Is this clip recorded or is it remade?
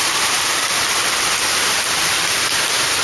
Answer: recorded